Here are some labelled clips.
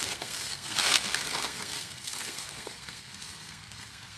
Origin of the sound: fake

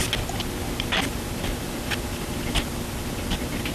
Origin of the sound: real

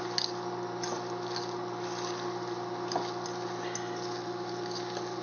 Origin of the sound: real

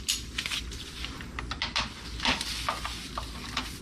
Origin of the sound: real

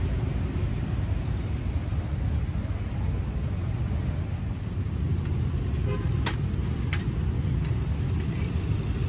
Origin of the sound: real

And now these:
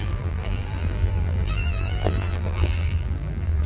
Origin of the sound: fake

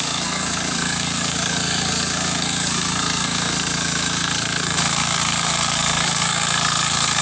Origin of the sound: fake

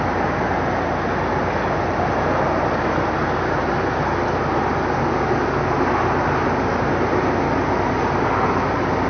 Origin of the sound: real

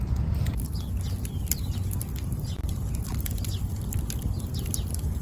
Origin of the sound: real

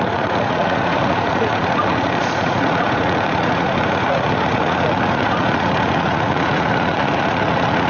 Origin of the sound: fake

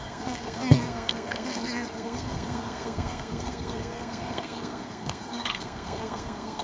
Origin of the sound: fake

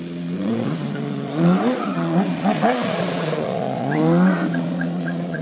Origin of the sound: fake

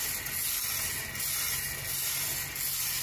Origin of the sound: real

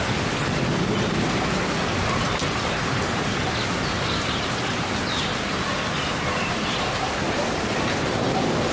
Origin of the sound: fake